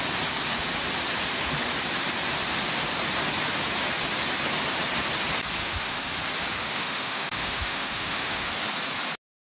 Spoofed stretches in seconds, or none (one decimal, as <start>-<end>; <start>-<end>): 5.6-6.1; 6.6-8.5